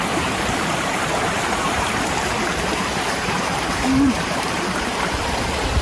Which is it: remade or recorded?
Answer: remade